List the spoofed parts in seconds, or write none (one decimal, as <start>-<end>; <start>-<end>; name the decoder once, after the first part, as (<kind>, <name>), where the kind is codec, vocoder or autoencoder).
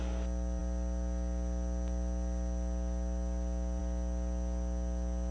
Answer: none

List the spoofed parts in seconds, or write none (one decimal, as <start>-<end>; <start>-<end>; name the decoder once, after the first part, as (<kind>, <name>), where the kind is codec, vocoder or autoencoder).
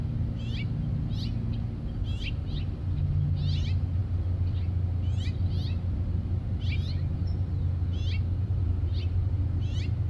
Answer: none